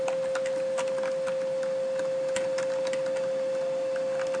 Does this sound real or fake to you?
real